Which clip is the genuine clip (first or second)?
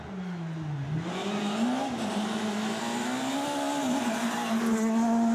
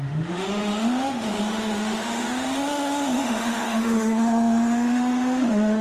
first